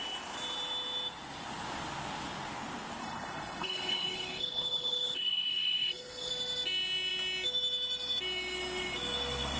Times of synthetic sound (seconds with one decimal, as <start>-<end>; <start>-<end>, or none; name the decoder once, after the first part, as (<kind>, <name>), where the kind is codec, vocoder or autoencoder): 3.0-6.3 (codec, HILCodec)